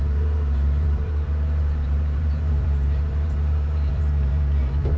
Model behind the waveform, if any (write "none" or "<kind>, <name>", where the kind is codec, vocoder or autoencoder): vocoder, BigVGAN v2